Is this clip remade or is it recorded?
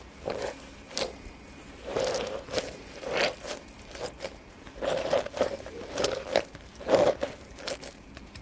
remade